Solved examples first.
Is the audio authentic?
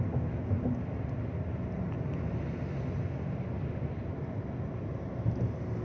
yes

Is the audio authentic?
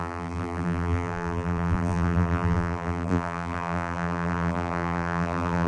no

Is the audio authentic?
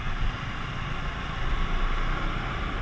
yes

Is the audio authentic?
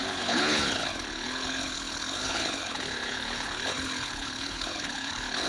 no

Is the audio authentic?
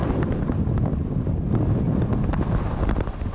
yes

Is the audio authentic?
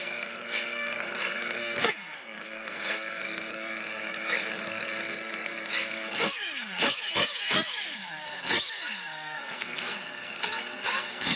no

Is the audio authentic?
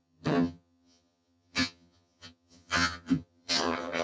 no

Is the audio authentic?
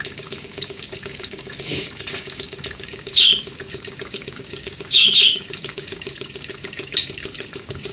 no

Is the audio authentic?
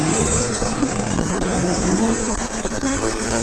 no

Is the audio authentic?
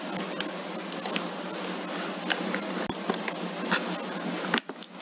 yes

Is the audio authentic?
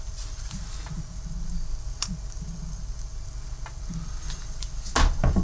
yes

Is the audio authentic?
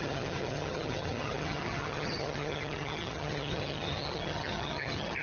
no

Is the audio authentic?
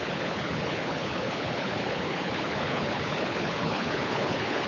no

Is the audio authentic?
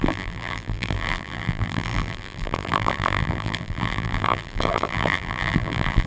no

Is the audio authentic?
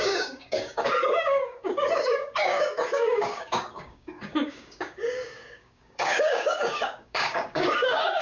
no